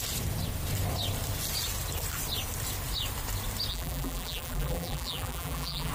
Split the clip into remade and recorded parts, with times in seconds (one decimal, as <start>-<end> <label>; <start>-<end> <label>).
0.0-3.7 recorded; 3.7-5.9 remade